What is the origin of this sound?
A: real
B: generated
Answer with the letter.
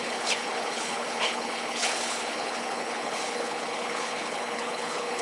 B